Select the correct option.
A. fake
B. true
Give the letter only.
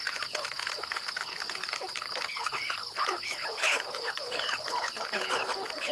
A